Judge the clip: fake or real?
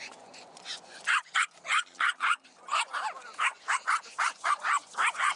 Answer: fake